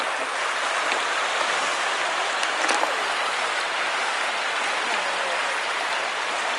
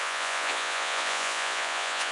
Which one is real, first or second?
first